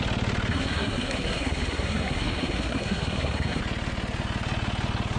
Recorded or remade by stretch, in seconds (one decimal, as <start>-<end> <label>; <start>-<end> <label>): 0.0-0.5 recorded; 0.5-3.6 remade; 3.6-5.2 recorded